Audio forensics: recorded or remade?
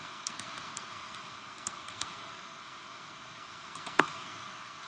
remade